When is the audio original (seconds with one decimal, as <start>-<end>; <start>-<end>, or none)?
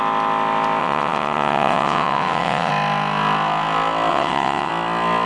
0.0-0.8; 2.7-4.1; 4.7-5.3